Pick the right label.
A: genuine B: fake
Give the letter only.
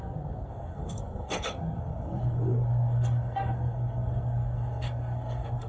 B